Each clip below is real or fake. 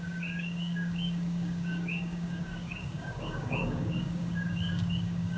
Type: fake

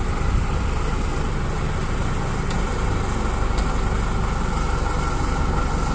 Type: real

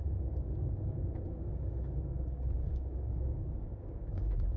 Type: fake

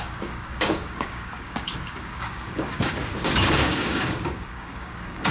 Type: fake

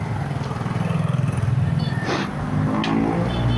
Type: real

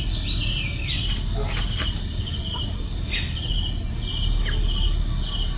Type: real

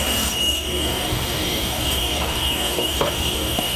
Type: fake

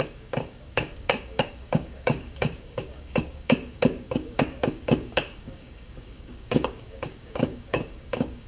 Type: fake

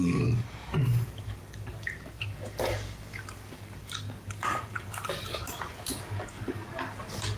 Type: fake